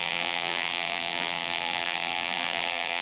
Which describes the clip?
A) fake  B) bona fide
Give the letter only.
A